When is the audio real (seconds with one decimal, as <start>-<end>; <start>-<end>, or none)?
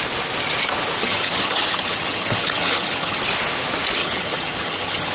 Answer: 0.0-1.0; 3.2-4.0